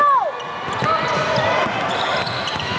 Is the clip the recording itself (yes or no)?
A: yes